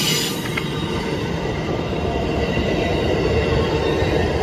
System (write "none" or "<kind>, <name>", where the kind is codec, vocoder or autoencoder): vocoder, BigVGAN v2